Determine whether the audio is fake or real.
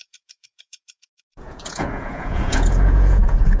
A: fake